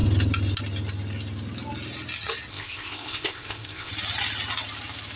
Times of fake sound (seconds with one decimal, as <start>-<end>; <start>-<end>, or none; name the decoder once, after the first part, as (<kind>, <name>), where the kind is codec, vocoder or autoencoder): 2.5-3.9 (codec, ZipCodec)